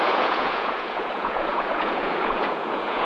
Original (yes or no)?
no